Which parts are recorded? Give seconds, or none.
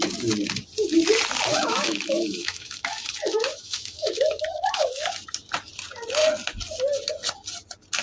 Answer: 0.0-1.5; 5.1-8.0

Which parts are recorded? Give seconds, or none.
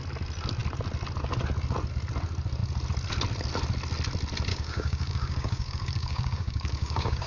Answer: 0.0-4.5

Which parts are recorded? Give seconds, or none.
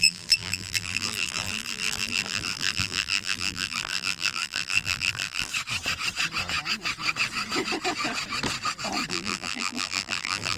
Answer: 5.5-9.1